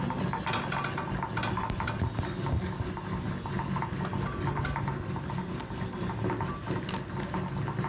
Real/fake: real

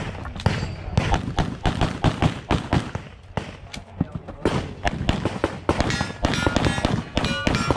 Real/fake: real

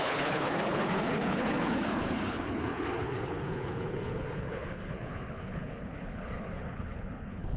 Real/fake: fake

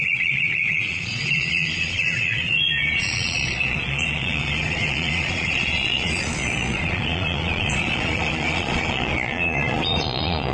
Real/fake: fake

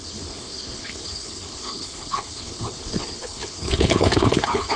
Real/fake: fake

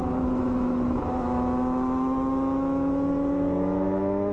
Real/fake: fake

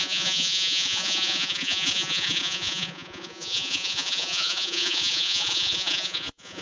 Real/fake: fake